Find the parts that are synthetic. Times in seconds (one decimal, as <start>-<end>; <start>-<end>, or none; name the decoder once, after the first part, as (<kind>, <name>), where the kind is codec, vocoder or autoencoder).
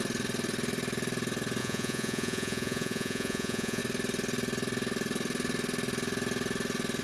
1.6-3.8 (vocoder, Vocos)